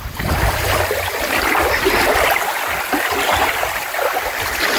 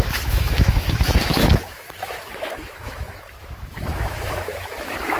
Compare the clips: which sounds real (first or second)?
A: first